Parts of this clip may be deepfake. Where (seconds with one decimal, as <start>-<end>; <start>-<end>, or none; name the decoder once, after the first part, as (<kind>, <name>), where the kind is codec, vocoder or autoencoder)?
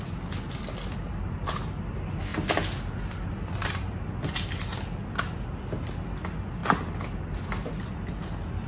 none